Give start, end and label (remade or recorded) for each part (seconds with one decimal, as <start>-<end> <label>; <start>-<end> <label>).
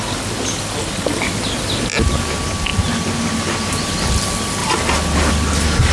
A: 0.0-5.9 recorded